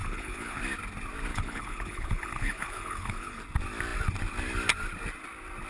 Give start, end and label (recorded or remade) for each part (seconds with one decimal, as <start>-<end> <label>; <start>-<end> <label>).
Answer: 0.0-0.6 remade; 0.6-1.3 recorded; 1.3-3.4 remade; 3.4-5.7 recorded